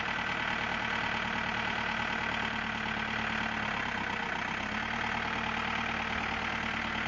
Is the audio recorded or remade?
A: recorded